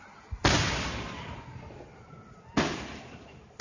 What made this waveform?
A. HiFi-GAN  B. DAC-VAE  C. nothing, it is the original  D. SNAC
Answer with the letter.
C